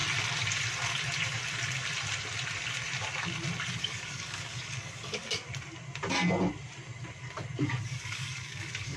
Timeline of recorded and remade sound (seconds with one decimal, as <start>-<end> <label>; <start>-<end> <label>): 0.0-3.8 recorded; 3.8-5.4 remade; 5.4-7.8 recorded; 7.8-9.0 remade